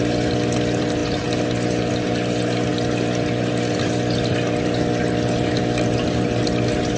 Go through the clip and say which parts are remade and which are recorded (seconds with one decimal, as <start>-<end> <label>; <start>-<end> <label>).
0.0-7.0 recorded

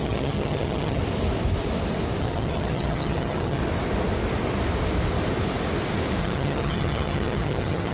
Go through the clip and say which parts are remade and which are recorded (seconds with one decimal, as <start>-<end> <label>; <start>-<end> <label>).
0.0-1.0 remade; 1.0-2.2 recorded; 2.2-3.6 remade; 3.6-6.2 recorded; 6.2-7.9 remade

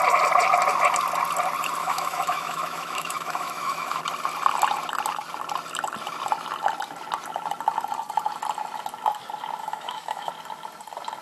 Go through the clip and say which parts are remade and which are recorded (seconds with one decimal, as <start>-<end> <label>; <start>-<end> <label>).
0.0-1.8 recorded; 1.8-4.0 remade; 4.0-9.6 recorded; 9.6-10.3 remade; 10.3-11.2 recorded

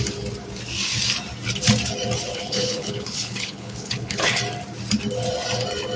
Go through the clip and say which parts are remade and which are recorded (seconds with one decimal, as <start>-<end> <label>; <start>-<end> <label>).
0.0-2.3 recorded; 2.3-4.4 remade; 4.4-6.0 recorded